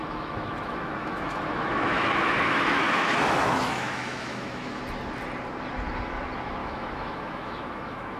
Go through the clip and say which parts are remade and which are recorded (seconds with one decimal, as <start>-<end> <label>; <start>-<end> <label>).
0.0-4.8 remade; 4.8-6.6 recorded; 6.6-8.2 remade